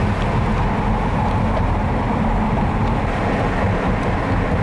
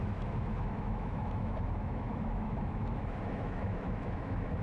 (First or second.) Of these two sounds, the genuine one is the first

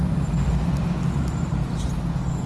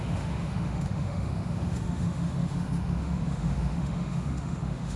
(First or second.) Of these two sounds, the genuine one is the first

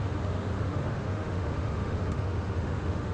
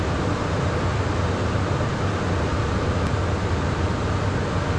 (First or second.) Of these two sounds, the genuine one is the second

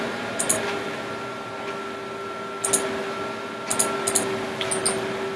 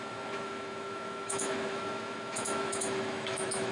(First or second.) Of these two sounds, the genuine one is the first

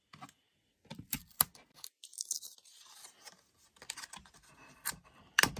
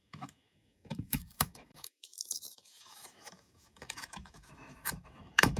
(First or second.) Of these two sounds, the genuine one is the first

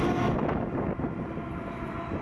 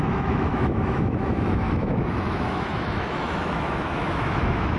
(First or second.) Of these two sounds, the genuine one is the first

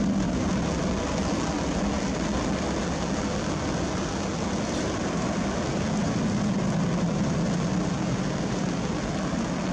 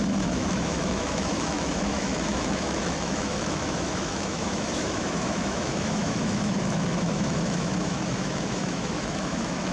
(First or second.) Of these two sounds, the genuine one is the first